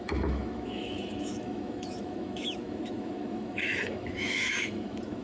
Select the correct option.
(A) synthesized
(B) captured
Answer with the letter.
A